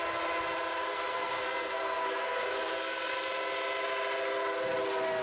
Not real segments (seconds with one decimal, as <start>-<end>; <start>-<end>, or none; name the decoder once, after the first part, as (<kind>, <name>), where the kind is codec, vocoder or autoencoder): 0.9-3.1 (codec, SNAC)